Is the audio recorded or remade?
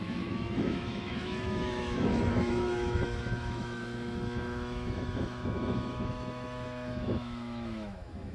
remade